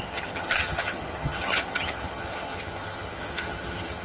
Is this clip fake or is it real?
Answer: fake